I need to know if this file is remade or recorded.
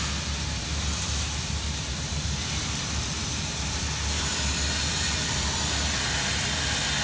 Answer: remade